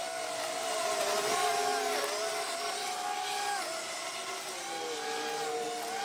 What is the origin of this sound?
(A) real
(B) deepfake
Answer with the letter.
A